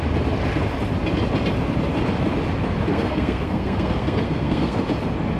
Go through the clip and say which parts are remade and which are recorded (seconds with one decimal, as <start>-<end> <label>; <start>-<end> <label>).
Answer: 0.0-2.9 recorded; 2.9-4.8 remade; 4.8-5.4 recorded